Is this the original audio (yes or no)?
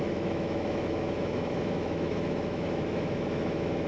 no